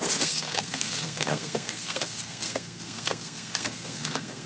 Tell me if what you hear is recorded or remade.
remade